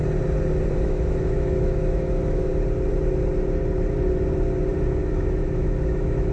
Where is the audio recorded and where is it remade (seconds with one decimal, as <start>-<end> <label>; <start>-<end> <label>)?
0.0-0.8 recorded; 0.8-2.5 remade; 2.5-5.0 recorded; 5.0-6.3 remade